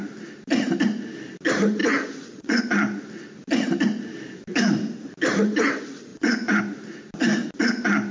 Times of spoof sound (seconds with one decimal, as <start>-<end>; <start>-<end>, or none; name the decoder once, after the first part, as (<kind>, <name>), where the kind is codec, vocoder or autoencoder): 1.8-2.6 (vocoder, Vocos); 6.1-6.6